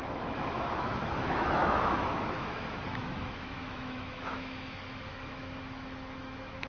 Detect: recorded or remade remade